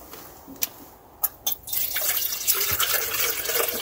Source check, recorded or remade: remade